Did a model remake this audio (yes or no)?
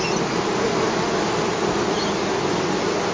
no